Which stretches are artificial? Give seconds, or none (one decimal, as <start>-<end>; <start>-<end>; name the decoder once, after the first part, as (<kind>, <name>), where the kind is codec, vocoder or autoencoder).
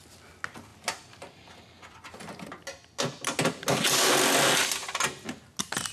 0.7-1.5 (vocoder, BigVGAN v2)